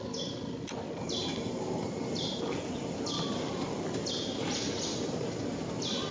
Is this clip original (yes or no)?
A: yes